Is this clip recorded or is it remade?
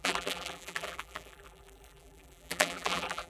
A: remade